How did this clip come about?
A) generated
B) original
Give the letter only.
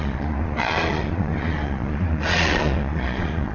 A